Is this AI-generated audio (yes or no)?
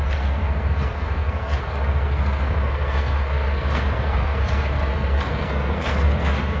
yes